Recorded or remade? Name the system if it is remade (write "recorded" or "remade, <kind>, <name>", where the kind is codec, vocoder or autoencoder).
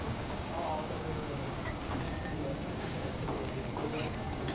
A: remade, codec, DAC